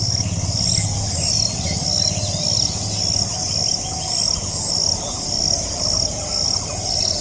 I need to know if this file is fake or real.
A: real